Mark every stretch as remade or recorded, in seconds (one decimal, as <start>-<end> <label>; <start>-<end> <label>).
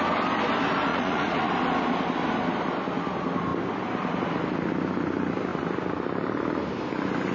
0.0-0.9 recorded; 0.9-1.5 remade; 1.5-7.3 recorded